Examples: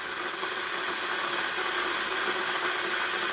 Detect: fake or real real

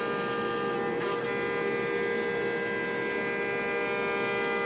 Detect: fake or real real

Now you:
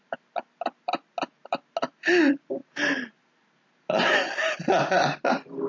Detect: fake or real real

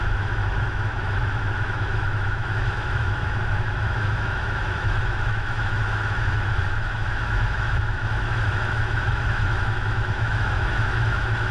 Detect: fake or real fake